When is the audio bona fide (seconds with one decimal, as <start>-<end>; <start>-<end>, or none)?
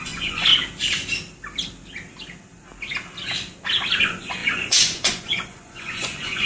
0.5-4.0